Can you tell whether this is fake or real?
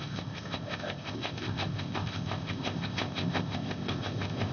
fake